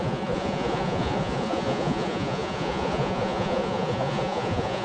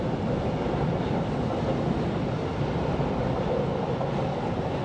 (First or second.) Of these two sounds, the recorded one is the second